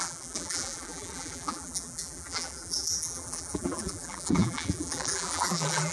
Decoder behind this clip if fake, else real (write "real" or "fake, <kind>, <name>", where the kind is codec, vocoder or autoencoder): fake, vocoder, BigVGAN v2